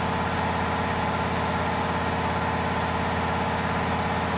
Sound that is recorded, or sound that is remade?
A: recorded